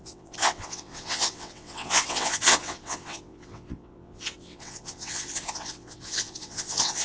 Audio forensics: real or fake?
fake